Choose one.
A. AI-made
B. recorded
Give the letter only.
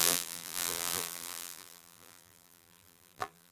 A